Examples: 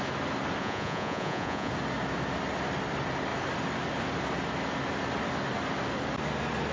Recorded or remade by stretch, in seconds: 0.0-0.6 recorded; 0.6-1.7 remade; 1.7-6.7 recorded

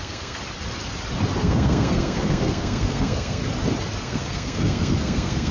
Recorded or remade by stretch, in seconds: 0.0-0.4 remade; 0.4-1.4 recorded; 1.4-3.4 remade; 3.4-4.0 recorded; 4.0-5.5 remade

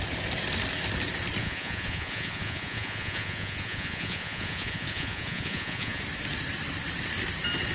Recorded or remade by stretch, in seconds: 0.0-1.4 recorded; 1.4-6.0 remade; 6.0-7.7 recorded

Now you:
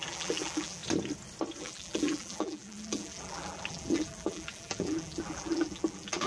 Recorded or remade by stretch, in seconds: 0.0-0.8 remade; 0.8-1.6 recorded; 1.6-6.3 remade

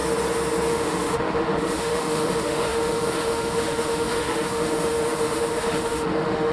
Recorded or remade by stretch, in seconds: 0.0-0.7 recorded; 0.7-6.5 remade